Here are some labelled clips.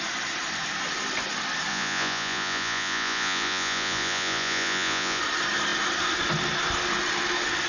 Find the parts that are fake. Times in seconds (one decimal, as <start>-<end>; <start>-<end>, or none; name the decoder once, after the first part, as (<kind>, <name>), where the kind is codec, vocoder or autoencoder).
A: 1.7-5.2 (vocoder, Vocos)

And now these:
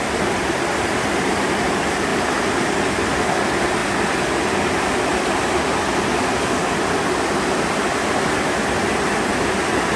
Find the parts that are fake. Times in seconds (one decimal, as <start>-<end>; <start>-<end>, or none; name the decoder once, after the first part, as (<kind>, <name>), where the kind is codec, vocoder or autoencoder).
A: none

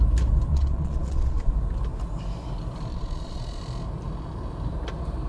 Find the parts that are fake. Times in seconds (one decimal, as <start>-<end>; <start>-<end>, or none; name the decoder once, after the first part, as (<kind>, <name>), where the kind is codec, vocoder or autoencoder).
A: 0.5-1.5 (vocoder, Vocos); 2.9-3.6

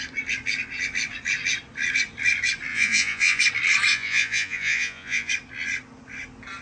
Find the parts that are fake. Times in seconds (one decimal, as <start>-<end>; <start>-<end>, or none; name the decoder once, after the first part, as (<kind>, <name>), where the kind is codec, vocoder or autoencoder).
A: 2.7-3.4 (vocoder, Vocos); 3.9-5.3